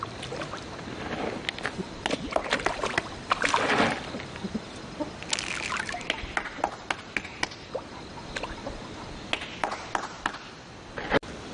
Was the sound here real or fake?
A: real